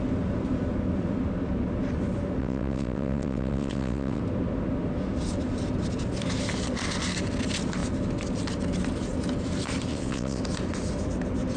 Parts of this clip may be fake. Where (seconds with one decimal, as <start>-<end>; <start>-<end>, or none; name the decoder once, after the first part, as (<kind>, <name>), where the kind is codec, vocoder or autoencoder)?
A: 2.4-4.2 (vocoder, WaveNeXt); 9.9-10.4